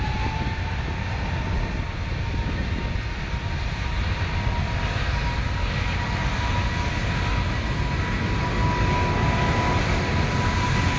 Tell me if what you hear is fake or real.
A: real